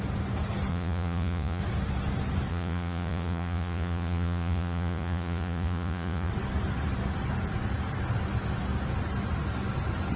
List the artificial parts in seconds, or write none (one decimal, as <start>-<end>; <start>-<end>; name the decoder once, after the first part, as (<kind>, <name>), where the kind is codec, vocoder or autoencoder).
0.7-1.6 (vocoder, Vocos); 2.5-6.3